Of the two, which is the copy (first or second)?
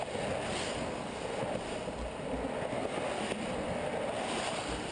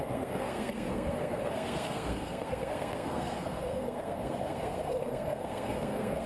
second